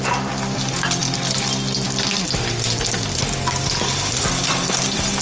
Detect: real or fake real